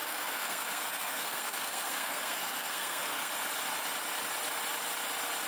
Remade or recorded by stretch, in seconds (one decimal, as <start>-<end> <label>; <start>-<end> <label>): 0.0-3.3 remade; 3.3-5.5 recorded